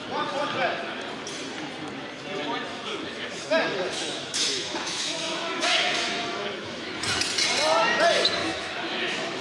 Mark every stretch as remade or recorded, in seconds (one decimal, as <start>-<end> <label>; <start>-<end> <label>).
0.0-2.7 recorded; 2.7-6.9 remade; 6.9-8.4 recorded; 8.4-9.4 remade